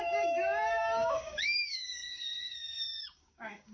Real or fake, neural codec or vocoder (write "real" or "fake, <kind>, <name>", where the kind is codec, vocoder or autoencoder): fake, codec, DAC